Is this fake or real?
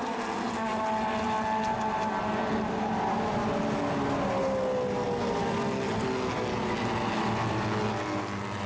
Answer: real